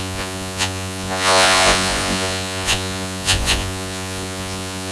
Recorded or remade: remade